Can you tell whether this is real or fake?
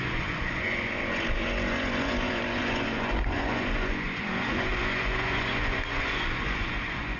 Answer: fake